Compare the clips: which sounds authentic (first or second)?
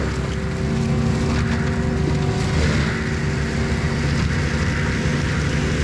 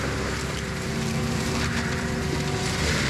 first